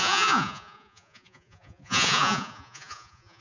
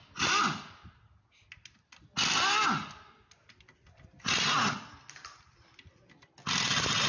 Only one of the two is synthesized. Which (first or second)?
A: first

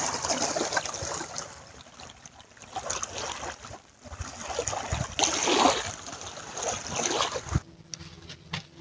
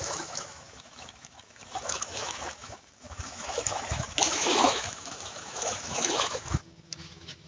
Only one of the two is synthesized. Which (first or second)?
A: second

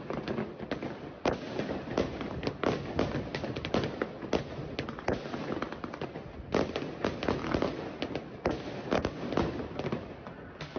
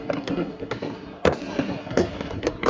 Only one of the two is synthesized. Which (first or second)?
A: second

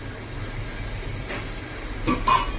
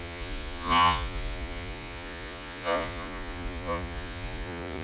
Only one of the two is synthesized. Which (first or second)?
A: second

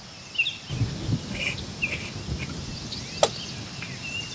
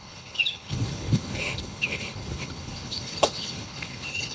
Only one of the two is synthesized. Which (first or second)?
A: second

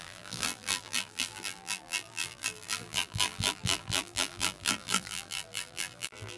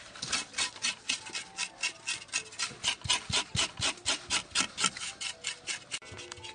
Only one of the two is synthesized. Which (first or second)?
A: first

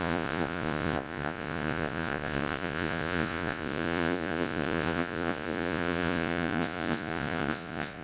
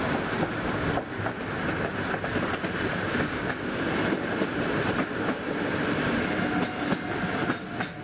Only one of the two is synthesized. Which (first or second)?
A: first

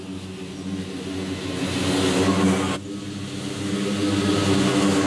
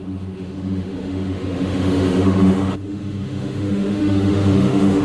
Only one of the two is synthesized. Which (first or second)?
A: second